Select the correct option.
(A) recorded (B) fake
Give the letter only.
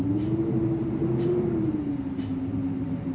A